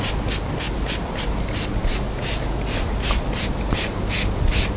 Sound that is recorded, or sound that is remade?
recorded